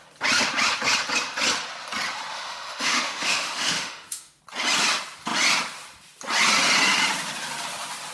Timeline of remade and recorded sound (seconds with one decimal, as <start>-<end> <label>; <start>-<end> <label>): 0.0-2.3 recorded; 2.3-4.4 remade; 4.4-8.1 recorded